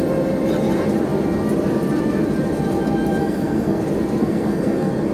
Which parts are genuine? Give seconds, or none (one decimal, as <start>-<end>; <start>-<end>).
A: 0.0-3.2; 3.8-4.2